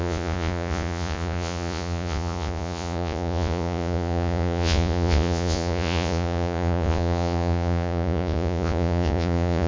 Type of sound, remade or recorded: remade